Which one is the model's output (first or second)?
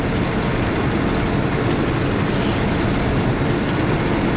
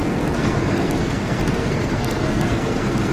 second